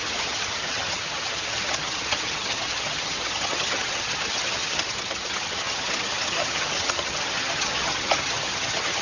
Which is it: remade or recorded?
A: remade